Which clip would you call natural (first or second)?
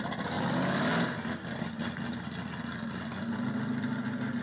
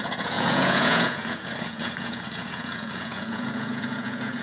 first